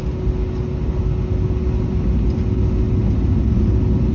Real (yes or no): yes